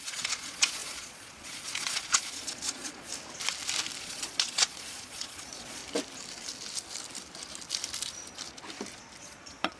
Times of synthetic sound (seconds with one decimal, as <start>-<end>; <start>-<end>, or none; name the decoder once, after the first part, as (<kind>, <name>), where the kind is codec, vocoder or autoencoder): 0.0-3.1 (vocoder, Vocos); 4.0-5.8; 9.2-9.8